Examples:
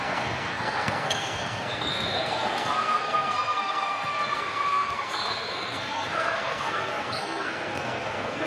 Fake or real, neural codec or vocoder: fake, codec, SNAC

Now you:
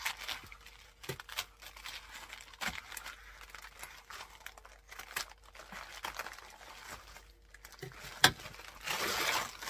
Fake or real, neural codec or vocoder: real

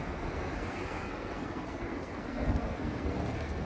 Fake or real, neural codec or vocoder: fake, codec, SNAC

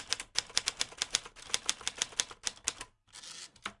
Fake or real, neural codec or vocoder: real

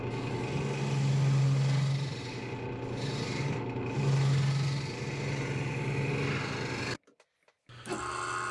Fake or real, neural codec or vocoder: real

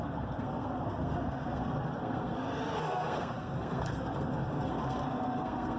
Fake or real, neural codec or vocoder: fake, codec, SNAC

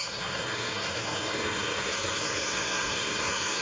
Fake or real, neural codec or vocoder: fake, codec, SNAC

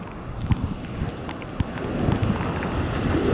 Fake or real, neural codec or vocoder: real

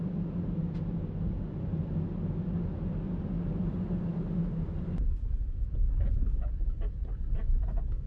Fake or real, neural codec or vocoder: real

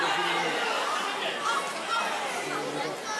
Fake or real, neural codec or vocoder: real